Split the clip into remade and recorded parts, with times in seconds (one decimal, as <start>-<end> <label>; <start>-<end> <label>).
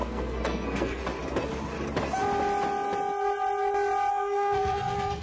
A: 0.0-1.0 remade; 1.0-4.1 recorded; 4.1-5.2 remade